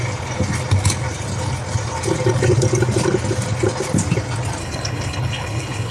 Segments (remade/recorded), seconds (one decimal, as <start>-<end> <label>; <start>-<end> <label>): 0.0-4.6 recorded; 4.6-5.9 remade